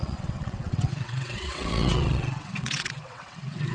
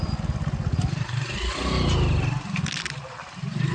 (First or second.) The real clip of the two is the second